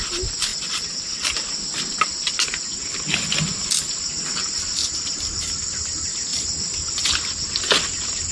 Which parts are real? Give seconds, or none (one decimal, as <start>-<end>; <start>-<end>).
0.0-8.3